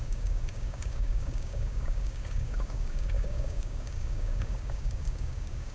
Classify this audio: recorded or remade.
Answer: remade